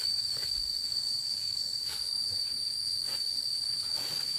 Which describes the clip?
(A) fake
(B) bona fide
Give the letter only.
A